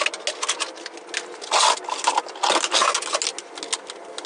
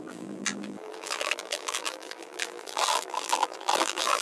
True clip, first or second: first